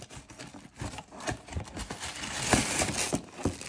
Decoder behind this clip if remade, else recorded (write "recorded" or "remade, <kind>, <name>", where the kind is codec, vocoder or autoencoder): recorded